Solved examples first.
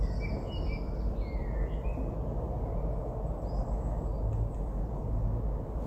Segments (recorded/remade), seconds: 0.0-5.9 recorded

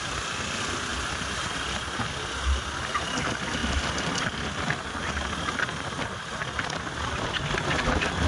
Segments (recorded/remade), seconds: 0.0-8.3 recorded

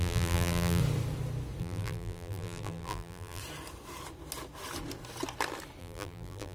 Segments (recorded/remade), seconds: 0.0-0.8 remade; 0.8-1.6 recorded; 1.6-3.4 remade; 3.4-5.8 recorded; 5.8-6.5 remade

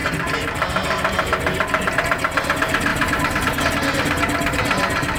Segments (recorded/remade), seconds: 0.0-1.9 remade; 1.9-2.9 recorded; 2.9-3.6 remade; 3.6-5.2 recorded

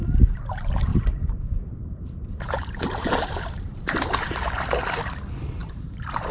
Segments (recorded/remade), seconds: 0.0-0.9 recorded; 0.9-4.5 remade; 4.5-5.6 recorded; 5.6-6.3 remade

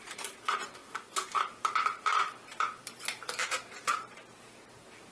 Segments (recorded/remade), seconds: 0.0-5.1 remade

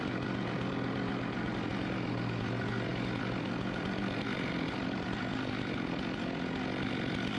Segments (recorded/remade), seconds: 0.0-1.7 remade; 1.7-2.4 recorded; 2.4-7.4 remade